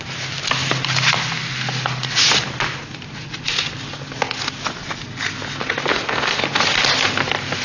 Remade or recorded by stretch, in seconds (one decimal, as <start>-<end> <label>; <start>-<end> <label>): 0.0-5.9 recorded; 5.9-6.4 remade; 6.4-7.6 recorded